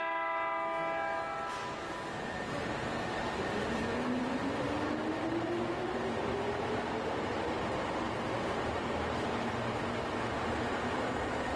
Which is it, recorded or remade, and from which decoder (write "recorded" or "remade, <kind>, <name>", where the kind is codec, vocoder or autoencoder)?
recorded